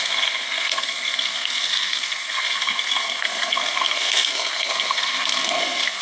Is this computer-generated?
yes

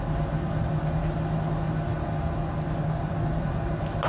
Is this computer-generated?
no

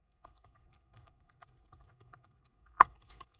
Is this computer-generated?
yes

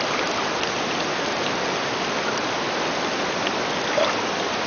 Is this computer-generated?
no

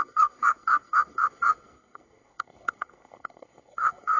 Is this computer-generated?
yes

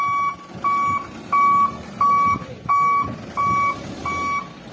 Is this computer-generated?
no